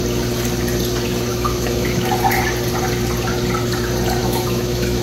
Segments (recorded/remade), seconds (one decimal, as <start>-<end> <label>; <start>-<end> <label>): 0.0-1.3 recorded; 1.3-2.1 remade; 2.1-4.2 recorded; 4.2-5.0 remade

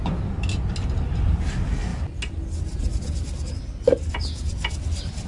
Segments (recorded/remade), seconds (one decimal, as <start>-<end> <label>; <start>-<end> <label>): 0.0-5.3 recorded

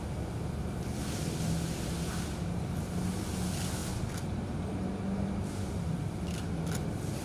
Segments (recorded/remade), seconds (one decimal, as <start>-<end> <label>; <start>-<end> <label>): 0.0-7.2 recorded

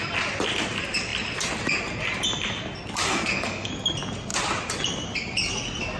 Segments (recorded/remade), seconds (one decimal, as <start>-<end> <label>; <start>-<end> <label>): 0.0-3.1 recorded; 3.1-3.7 remade; 3.7-6.0 recorded

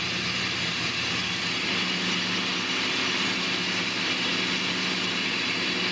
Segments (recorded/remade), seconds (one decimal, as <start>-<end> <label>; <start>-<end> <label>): 0.0-5.9 recorded